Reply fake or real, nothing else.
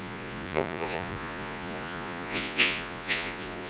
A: fake